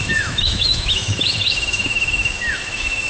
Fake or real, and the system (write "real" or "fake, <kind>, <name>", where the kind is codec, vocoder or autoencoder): fake, autoencoder, DAC-VAE